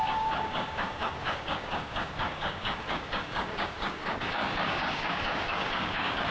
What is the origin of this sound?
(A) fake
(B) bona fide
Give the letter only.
A